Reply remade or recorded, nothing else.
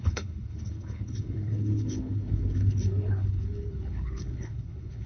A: remade